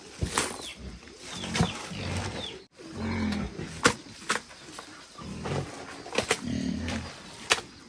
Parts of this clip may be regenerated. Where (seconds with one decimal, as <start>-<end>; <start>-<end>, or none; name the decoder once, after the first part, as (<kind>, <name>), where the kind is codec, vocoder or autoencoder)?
none